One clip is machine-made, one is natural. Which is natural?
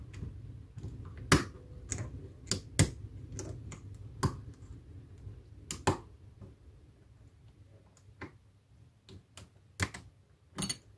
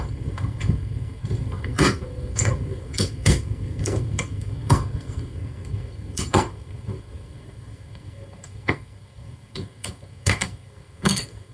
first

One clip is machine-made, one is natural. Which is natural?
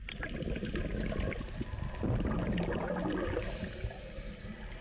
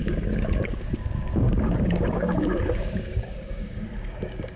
first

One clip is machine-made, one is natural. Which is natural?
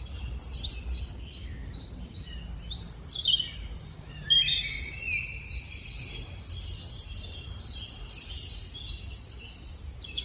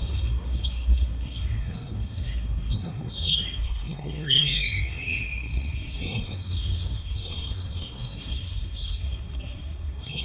first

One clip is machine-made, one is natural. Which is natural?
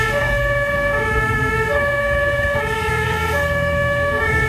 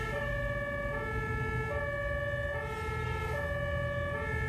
second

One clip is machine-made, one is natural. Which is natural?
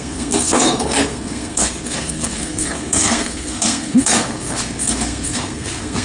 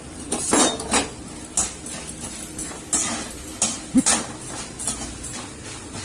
second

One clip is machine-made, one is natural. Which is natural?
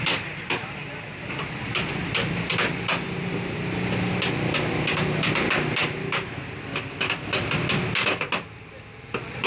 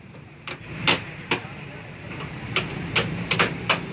first